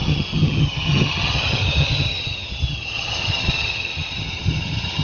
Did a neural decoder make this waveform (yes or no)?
yes